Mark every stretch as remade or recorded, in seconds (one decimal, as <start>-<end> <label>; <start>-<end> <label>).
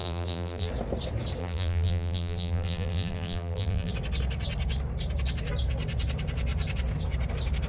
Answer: 0.0-0.7 remade; 0.7-1.4 recorded; 1.4-3.9 remade; 3.9-7.7 recorded